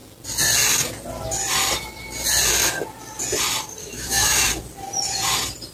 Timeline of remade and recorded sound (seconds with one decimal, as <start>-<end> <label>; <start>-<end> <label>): 0.0-3.8 recorded; 3.8-4.5 remade; 4.5-5.7 recorded